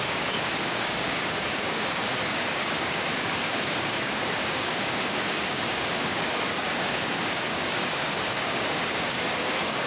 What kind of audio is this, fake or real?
fake